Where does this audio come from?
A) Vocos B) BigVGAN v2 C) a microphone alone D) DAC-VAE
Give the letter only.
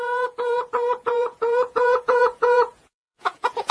A